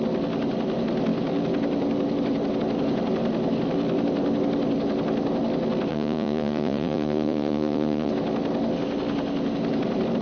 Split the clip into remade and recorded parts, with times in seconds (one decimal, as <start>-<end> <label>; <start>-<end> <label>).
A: 0.0-5.9 recorded; 5.9-8.1 remade; 8.1-10.2 recorded